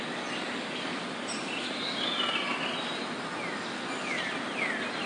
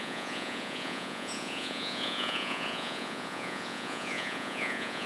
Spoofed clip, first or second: second